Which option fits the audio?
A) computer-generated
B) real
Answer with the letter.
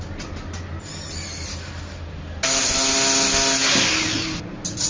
B